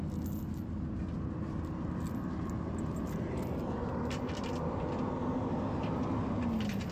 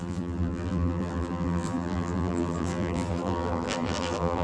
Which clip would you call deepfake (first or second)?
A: second